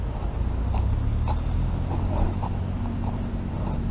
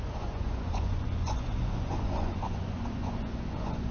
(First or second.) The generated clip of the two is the second